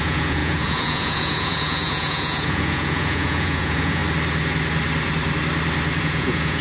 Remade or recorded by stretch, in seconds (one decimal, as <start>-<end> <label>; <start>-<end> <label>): 0.0-4.0 remade; 4.0-6.0 recorded; 6.0-6.6 remade